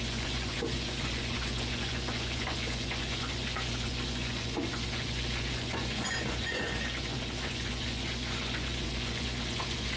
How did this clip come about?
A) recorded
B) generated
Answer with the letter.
B